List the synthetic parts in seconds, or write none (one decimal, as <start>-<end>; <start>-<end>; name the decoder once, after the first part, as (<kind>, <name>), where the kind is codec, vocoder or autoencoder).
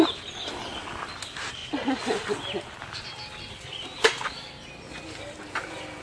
none